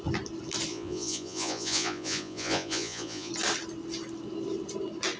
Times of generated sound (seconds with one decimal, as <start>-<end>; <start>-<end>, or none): 0.7-3.3